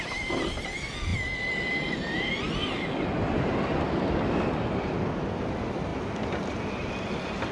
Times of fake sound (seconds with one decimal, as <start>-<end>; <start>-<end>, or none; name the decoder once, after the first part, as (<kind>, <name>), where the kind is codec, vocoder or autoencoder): none